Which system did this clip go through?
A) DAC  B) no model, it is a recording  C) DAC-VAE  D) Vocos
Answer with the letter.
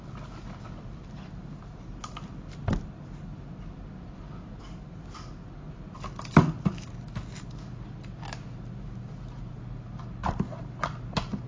B